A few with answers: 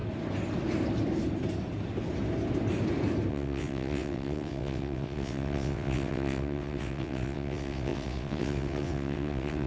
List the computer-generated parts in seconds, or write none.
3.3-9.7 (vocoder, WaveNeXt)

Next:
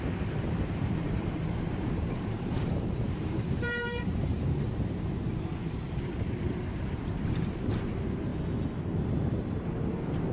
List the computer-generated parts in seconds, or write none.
0.0-8.3 (vocoder, BigVGAN v2); 9.0-10.3

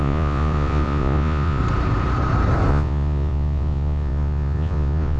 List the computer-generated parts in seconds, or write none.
0.0-1.6 (vocoder, Vocos); 2.7-5.2